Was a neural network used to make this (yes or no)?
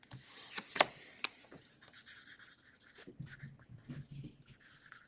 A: no